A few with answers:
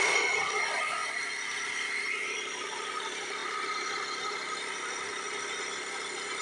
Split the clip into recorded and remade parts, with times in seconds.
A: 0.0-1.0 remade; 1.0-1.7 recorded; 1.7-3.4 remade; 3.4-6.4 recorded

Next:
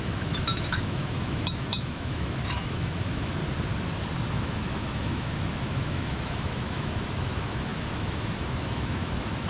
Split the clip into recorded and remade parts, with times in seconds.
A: 0.0-3.4 remade; 3.4-4.3 recorded; 4.3-9.5 remade

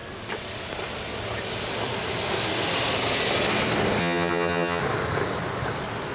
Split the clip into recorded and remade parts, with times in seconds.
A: 0.0-4.0 recorded; 4.0-4.8 remade; 4.8-6.1 recorded

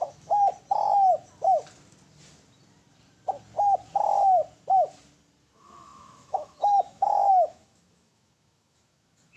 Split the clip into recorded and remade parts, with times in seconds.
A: 0.0-0.5 remade; 0.5-5.4 recorded; 5.4-9.4 remade